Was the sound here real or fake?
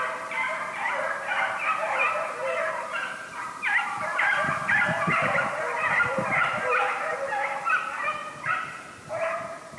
fake